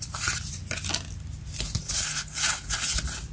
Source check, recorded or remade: recorded